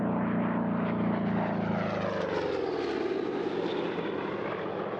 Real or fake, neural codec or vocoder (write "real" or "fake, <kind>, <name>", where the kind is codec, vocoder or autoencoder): real